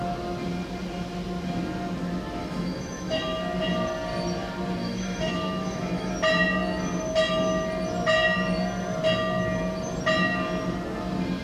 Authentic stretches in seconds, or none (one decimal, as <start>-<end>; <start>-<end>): 0.0-2.4; 3.2-4.8; 6.1-11.4